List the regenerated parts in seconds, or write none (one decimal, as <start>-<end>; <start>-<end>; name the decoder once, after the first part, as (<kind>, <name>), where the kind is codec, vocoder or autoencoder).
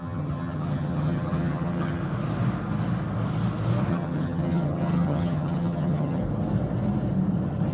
0.0-2.0 (vocoder, HiFi-GAN); 3.9-6.2